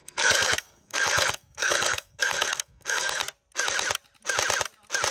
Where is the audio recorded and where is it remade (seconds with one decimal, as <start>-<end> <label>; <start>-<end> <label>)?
0.0-3.2 remade; 3.2-5.1 recorded